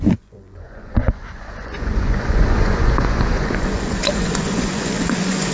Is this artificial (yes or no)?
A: yes